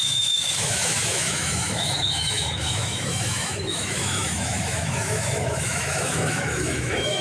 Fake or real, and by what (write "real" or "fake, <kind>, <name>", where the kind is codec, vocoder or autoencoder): fake, autoencoder, DAC-VAE